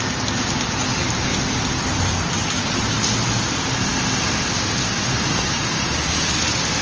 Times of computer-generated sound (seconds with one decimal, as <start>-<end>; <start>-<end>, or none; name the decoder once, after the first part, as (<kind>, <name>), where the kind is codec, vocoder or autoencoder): 1.3-2.7 (vocoder, BigVGAN v2)